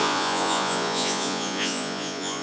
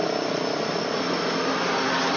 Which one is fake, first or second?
first